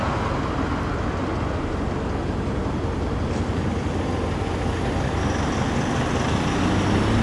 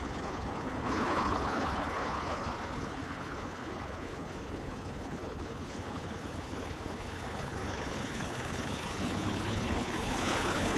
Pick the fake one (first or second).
second